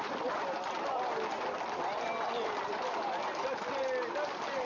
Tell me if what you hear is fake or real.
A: real